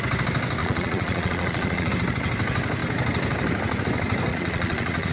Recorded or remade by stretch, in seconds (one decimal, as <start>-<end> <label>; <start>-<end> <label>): 0.0-0.6 recorded; 0.6-1.9 remade; 1.9-4.3 recorded; 4.3-5.1 remade